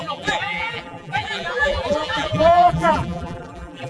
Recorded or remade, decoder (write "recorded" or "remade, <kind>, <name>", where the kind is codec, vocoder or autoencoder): remade, vocoder, BigVGAN v2